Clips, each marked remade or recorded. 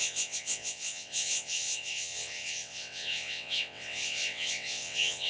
remade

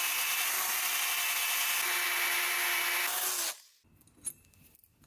recorded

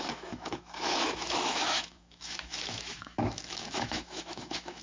remade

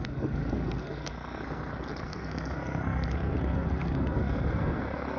remade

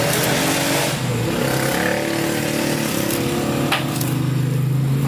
recorded